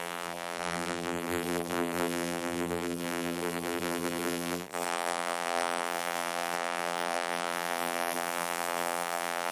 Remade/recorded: remade